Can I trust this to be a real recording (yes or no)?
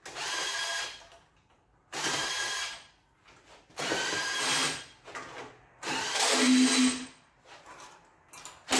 yes